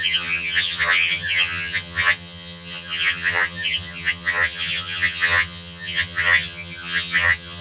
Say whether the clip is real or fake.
fake